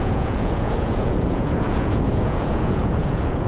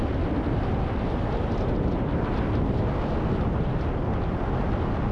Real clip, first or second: second